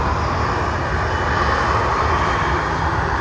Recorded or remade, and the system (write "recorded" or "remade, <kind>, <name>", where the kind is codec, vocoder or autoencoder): recorded